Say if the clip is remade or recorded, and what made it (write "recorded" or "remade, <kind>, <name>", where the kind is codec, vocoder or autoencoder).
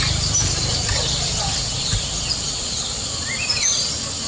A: recorded